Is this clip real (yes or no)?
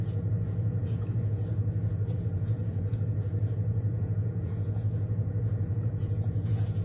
no